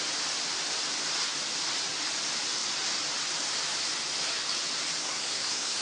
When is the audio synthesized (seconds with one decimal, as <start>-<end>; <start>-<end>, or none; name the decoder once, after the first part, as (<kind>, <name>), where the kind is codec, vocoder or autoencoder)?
5.0-5.8 (codec, SNAC)

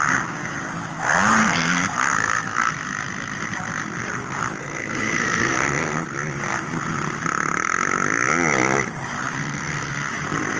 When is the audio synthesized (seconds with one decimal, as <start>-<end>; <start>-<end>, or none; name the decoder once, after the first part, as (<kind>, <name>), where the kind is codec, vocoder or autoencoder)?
1.4-2.7 (codec, SNAC); 4.6-6.0; 9.4-9.9

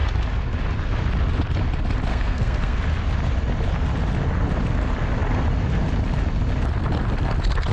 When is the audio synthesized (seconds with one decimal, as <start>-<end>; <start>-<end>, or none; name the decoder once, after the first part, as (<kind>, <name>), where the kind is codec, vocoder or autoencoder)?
2.1-2.8 (codec, SNAC)

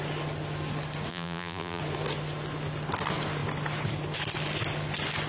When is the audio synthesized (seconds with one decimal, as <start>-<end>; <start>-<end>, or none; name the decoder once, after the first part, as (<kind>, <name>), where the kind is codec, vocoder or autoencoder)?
1.1-1.8 (vocoder, BigVGAN v2)

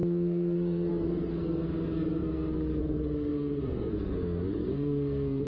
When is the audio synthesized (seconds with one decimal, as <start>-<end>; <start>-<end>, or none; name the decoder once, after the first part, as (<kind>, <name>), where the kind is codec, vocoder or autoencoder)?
0.0-5.5 (codec, SNAC)

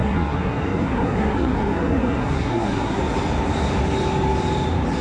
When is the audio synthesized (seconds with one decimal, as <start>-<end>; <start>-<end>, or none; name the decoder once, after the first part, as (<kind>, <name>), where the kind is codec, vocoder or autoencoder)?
0.0-3.0 (codec, SNAC)